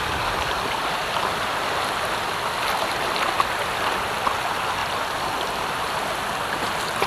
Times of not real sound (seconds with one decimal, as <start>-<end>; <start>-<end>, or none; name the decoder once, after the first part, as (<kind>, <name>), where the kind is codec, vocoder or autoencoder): none